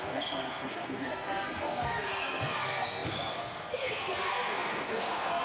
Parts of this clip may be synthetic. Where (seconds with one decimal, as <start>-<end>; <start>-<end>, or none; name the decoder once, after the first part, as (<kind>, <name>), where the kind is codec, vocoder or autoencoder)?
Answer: 0.0-5.4 (codec, SNAC)